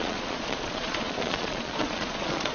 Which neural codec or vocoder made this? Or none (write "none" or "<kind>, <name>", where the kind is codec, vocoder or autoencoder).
vocoder, Vocos